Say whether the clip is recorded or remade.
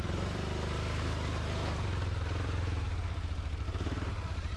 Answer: remade